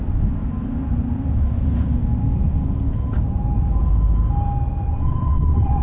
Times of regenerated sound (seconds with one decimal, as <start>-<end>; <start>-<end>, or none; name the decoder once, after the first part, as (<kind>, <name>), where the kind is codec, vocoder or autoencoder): 4.9-5.8 (vocoder, WaveNeXt)